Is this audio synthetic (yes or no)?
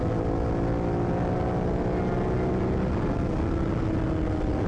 no